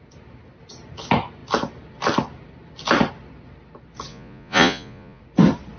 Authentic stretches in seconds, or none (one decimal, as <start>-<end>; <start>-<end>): 0.0-4.1; 5.2-5.8